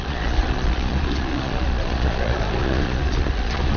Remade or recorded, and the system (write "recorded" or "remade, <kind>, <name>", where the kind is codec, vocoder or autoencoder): remade, vocoder, Vocos